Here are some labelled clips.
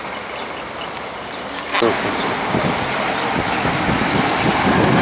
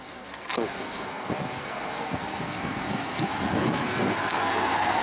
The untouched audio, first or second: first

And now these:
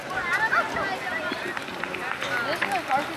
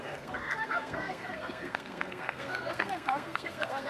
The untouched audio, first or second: first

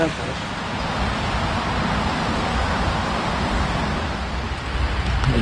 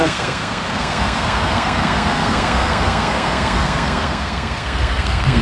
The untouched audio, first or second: first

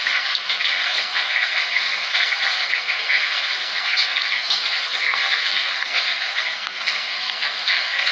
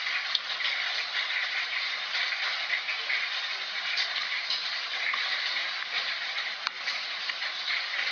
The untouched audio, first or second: second